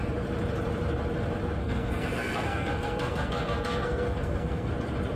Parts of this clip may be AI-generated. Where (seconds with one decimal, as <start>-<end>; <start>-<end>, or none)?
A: 1.6-4.7